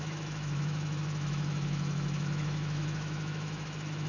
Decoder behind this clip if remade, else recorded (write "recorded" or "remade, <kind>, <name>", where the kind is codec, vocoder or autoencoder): remade, autoencoder, DAC-VAE